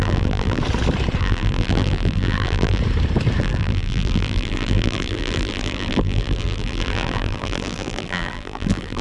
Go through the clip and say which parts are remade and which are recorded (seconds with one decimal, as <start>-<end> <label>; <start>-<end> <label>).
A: 0.0-0.6 remade; 0.6-1.2 recorded; 1.2-2.8 remade; 2.8-3.4 recorded; 3.4-9.0 remade